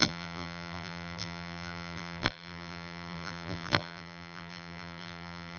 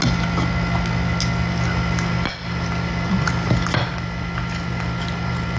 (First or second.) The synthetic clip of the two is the first